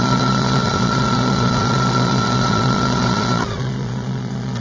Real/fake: fake